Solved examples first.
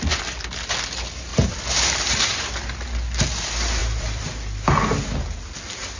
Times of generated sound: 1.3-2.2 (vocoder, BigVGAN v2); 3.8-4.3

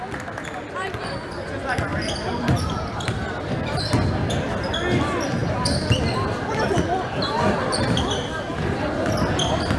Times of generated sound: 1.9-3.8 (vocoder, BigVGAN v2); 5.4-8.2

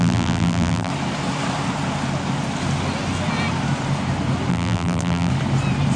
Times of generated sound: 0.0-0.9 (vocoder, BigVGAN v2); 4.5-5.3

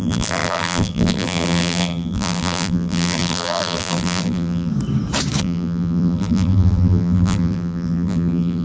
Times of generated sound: 0.0-4.7 (vocoder, BigVGAN v2); 5.4-8.6